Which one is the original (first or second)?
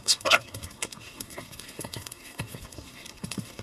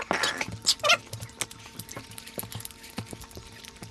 second